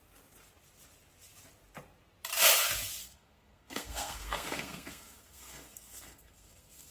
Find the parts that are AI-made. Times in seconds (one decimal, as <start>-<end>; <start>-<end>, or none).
3.0-6.9